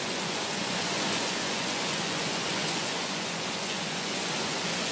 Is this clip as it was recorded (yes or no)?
no